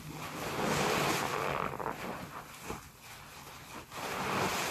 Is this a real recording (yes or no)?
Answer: yes